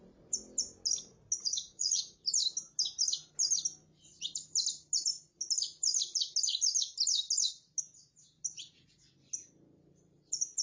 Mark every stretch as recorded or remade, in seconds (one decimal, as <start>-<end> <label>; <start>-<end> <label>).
0.0-1.4 recorded; 1.4-2.0 remade; 2.0-10.6 recorded